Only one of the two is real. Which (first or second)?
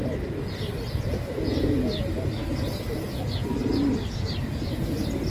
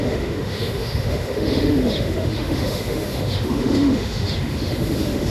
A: first